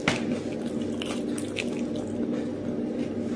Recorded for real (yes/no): yes